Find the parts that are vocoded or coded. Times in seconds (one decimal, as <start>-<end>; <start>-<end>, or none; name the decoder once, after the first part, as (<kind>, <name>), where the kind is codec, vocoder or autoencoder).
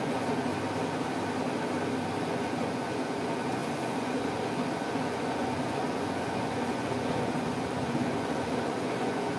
0.0-0.5 (vocoder, Vocos); 2.2-9.4